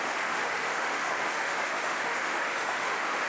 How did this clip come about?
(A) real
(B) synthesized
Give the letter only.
B